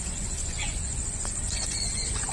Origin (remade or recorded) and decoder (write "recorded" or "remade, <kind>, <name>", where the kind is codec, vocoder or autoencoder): remade, vocoder, Vocos